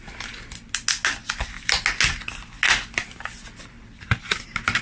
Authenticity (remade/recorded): recorded